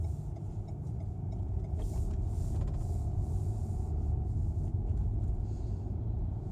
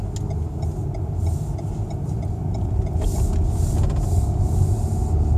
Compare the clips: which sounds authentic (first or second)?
second